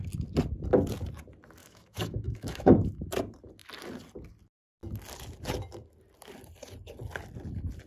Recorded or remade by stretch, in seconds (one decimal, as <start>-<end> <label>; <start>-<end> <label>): 0.0-1.6 recorded; 1.6-3.0 remade; 3.0-7.9 recorded